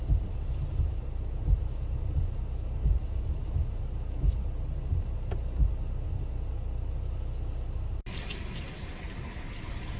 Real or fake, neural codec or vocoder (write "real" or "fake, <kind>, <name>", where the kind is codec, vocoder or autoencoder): real